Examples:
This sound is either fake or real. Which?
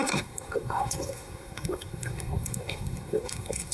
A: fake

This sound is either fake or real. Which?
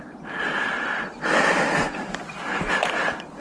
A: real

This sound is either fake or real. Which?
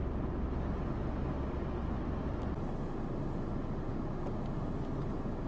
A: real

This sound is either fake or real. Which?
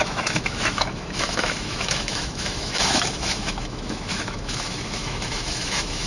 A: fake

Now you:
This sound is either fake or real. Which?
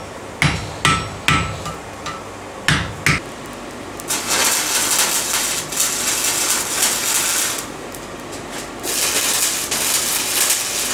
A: real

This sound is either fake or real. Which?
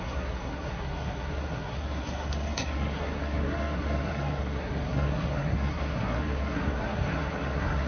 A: fake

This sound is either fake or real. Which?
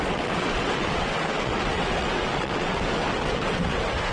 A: fake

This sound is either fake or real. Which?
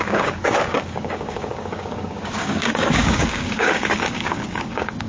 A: fake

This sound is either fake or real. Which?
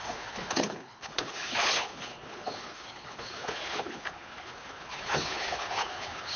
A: fake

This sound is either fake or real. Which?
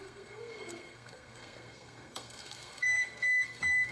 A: fake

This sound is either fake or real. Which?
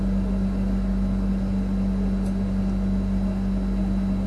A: real